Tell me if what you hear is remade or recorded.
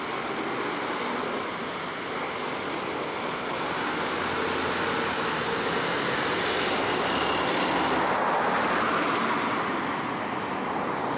recorded